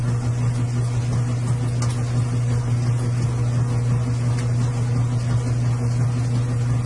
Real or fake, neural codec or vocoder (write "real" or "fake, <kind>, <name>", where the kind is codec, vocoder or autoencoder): real